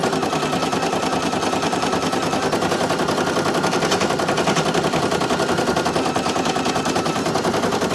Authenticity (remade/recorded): recorded